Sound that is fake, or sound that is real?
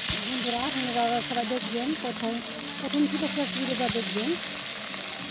real